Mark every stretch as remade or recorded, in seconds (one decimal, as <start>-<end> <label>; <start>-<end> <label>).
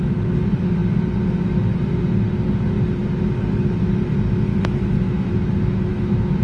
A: 0.0-4.5 recorded; 4.5-5.3 remade; 5.3-5.9 recorded; 5.9-6.4 remade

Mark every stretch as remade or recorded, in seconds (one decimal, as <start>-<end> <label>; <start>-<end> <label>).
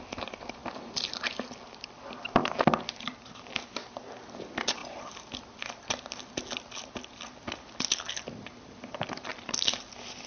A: 0.0-10.3 recorded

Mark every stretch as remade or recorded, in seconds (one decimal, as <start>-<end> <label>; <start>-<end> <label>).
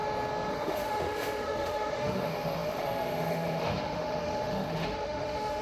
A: 0.0-0.5 recorded; 0.5-5.6 remade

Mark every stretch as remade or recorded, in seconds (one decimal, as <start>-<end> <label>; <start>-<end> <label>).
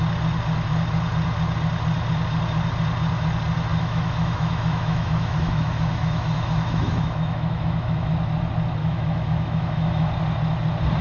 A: 0.0-3.7 recorded; 3.7-8.1 remade; 8.1-8.8 recorded; 8.8-10.1 remade; 10.1-11.0 recorded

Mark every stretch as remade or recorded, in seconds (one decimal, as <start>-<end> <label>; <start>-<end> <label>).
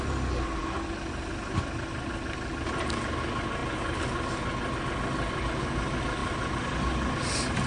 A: 0.0-7.7 recorded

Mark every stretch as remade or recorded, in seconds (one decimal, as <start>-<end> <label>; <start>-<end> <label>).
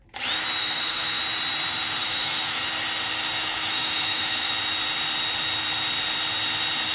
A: 0.0-0.6 recorded; 0.6-1.2 remade; 1.2-2.0 recorded; 2.0-2.6 remade; 2.6-3.5 recorded; 3.5-4.5 remade; 4.5-6.9 recorded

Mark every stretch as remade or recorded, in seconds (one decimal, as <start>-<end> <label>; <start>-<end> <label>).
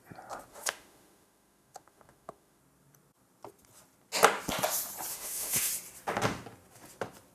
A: 0.0-0.5 recorded; 0.5-2.6 remade; 2.6-5.1 recorded; 5.1-5.7 remade; 5.7-7.3 recorded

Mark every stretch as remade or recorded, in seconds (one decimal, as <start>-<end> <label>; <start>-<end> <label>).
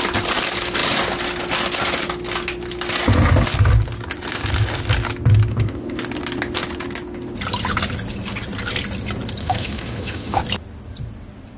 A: 0.0-5.5 recorded; 5.5-6.0 remade; 6.0-9.4 recorded; 9.4-10.4 remade; 10.4-11.6 recorded